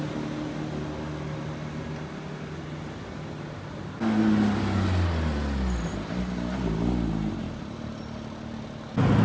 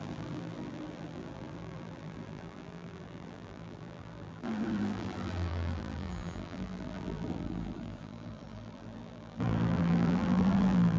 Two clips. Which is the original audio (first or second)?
first